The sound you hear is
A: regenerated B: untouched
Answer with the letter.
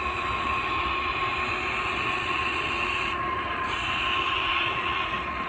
A